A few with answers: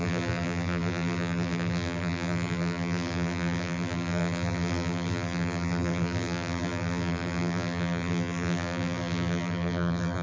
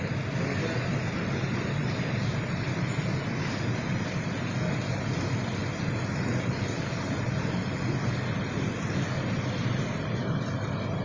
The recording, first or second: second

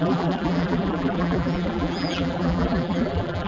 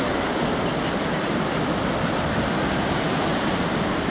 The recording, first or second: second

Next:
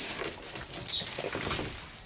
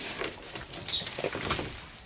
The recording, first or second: first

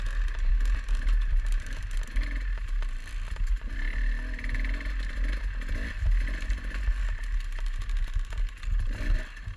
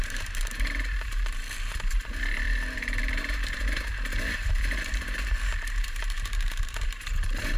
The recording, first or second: first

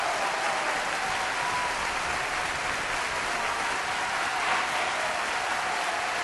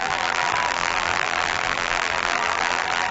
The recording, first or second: first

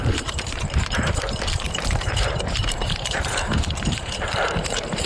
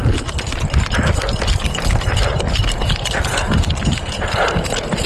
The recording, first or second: second